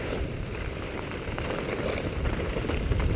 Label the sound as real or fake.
real